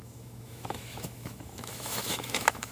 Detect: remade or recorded remade